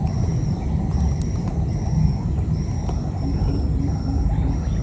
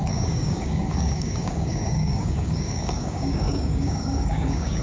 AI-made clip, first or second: second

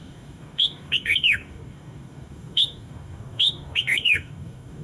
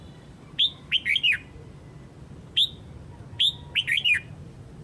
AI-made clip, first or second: first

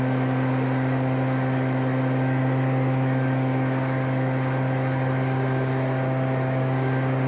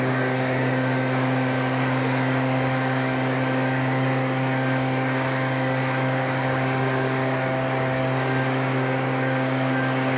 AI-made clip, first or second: second